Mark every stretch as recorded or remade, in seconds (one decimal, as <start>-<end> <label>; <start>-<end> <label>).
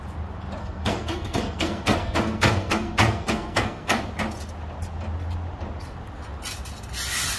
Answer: 0.0-0.6 recorded; 0.6-4.0 remade; 4.0-7.4 recorded